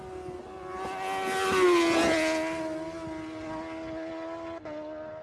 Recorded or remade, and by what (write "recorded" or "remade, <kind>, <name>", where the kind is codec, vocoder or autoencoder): recorded